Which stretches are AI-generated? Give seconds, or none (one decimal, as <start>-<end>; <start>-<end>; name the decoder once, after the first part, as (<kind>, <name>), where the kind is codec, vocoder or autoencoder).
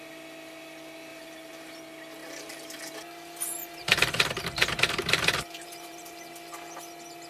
1.1-1.8 (vocoder, BigVGAN v2); 2.2-2.8; 3.6-6.3